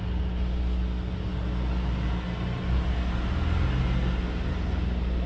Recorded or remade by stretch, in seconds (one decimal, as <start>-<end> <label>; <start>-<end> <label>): 0.0-5.3 recorded